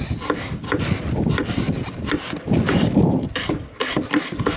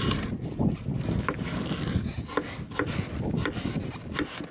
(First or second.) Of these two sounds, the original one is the second